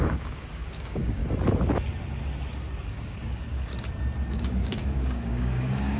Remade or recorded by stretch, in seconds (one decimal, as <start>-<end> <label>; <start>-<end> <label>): 0.0-1.2 remade; 1.2-2.9 recorded; 2.9-3.7 remade; 3.7-4.3 recorded; 4.3-6.0 remade